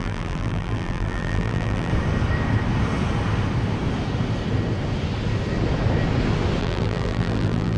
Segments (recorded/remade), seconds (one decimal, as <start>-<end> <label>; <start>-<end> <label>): 0.0-1.9 remade; 1.9-6.6 recorded; 6.6-7.8 remade